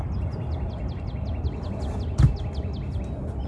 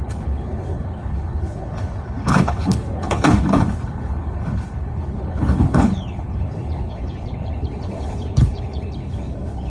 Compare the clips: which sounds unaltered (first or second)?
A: first